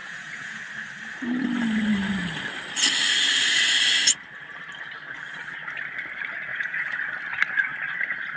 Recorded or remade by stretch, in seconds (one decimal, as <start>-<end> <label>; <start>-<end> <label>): 0.0-0.6 remade; 0.6-6.5 recorded; 6.5-7.0 remade; 7.0-8.4 recorded